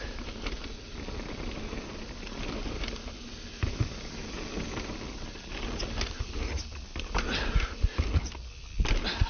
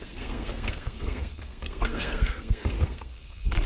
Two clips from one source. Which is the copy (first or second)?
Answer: second